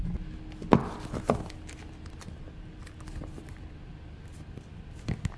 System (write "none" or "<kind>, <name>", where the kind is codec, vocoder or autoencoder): none